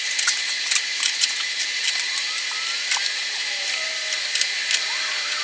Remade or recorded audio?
recorded